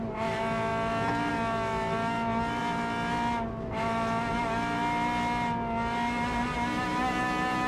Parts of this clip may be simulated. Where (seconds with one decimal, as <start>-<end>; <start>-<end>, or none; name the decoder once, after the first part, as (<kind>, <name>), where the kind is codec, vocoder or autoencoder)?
none